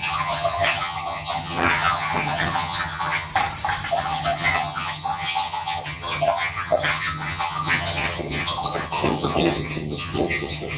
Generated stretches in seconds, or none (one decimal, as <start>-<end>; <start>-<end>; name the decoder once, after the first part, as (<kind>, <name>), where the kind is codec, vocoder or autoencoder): 0.0-3.3 (vocoder, HiFi-GAN); 3.9-10.8